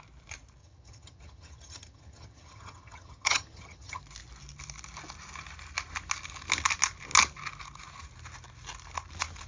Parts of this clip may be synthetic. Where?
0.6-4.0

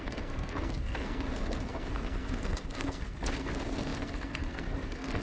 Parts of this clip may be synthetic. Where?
0.0-5.2

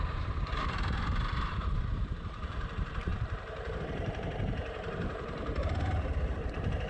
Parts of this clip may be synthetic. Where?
0.0-6.9